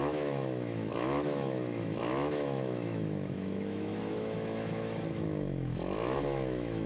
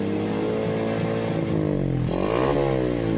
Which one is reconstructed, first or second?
first